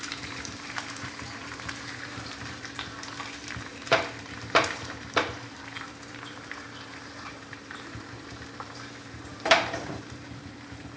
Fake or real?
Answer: fake